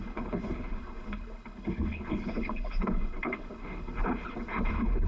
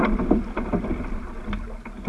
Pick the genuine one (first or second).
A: second